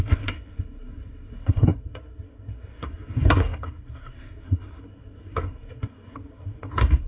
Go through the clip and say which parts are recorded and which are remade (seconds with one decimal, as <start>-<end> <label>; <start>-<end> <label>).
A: 0.0-7.1 remade